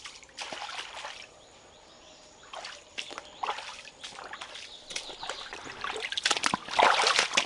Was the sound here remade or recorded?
recorded